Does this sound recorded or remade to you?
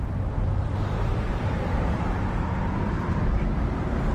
remade